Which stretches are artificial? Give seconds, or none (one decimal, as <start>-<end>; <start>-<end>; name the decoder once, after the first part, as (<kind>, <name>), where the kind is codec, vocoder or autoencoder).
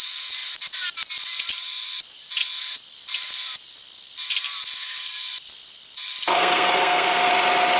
6.3-7.3 (codec, SNAC)